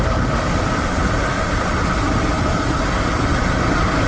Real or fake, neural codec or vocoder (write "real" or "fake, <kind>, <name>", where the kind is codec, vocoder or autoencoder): real